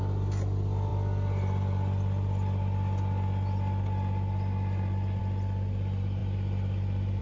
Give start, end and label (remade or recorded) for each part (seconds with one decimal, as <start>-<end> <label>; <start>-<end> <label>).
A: 0.0-7.2 recorded